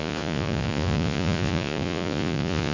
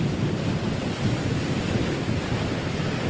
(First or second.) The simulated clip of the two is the first